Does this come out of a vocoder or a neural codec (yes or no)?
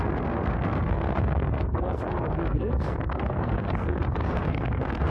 yes